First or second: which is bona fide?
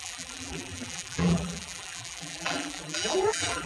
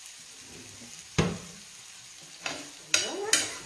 second